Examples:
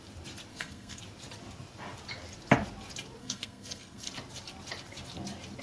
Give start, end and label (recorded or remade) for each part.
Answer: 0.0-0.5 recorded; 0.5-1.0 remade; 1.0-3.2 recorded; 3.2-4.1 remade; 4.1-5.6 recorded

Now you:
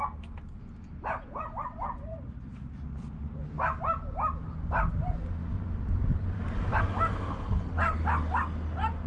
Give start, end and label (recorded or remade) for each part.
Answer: 0.0-2.1 recorded; 2.1-3.4 remade; 3.4-5.4 recorded; 5.4-6.8 remade; 6.8-9.1 recorded

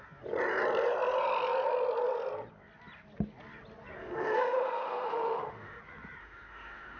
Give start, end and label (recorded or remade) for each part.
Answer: 0.0-4.0 recorded; 4.0-5.8 remade; 5.8-6.2 recorded; 6.2-7.0 remade

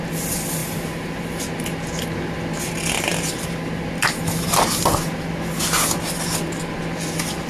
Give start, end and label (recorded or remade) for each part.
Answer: 0.0-0.6 recorded; 0.6-1.2 remade; 1.2-7.5 recorded